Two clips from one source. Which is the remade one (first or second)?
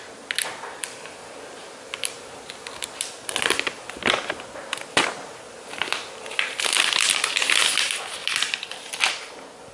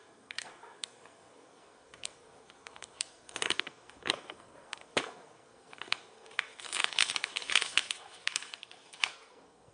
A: second